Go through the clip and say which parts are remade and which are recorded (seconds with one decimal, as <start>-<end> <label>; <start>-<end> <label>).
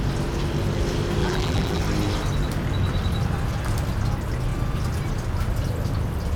0.0-1.2 recorded; 1.2-1.8 remade; 1.8-6.4 recorded